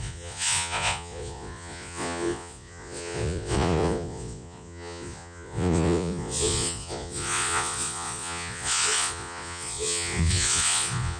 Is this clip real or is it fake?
fake